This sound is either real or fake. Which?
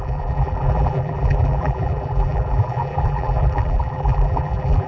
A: fake